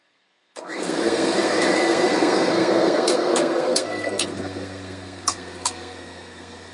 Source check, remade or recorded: remade